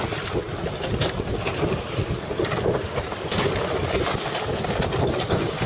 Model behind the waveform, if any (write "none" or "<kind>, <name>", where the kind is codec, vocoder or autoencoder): none